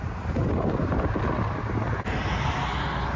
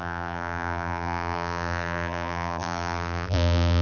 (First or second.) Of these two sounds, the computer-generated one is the second